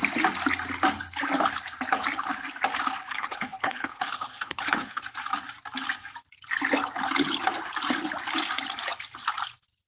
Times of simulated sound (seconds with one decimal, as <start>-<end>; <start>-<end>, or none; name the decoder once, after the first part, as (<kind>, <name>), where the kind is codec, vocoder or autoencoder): 3.1-5.0 (codec, HILCodec)